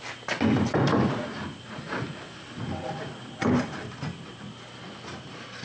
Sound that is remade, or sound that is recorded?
recorded